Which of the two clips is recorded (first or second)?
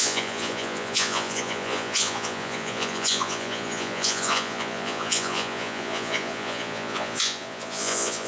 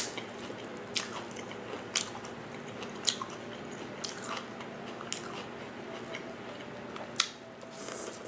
second